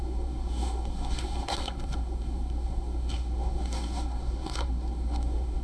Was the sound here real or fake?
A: fake